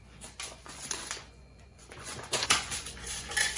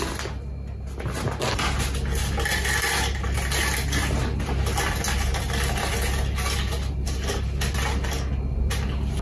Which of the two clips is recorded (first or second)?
second